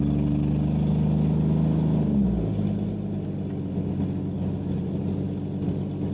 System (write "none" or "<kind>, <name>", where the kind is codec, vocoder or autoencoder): none